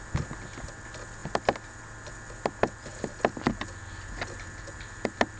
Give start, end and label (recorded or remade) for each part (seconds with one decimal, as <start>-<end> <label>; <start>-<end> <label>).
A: 0.0-5.4 recorded

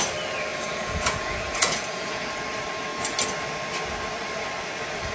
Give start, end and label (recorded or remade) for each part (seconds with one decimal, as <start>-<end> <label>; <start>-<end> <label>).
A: 0.0-0.5 recorded; 0.5-2.3 remade; 2.3-5.1 recorded

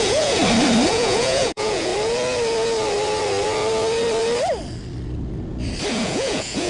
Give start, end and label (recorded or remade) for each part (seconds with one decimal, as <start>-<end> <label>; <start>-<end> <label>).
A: 0.0-0.4 remade; 0.4-0.9 recorded; 0.9-1.9 remade; 1.9-5.9 recorded; 5.9-6.7 remade

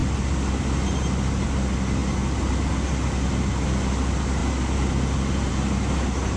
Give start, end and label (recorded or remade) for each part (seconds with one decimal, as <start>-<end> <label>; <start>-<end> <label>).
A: 0.0-6.4 recorded

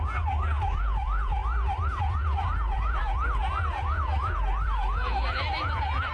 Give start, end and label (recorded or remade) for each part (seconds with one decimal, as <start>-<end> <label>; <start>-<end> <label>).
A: 0.0-1.4 remade; 1.4-2.0 recorded; 2.0-6.1 remade

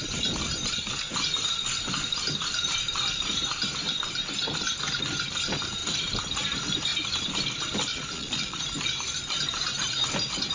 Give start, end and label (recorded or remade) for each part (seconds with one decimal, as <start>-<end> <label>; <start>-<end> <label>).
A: 0.0-7.9 recorded; 7.9-8.6 remade; 8.6-10.5 recorded

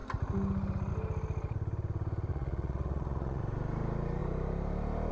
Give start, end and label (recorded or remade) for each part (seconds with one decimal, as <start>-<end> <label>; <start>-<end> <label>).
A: 0.0-2.3 recorded; 2.3-3.4 remade; 3.4-5.1 recorded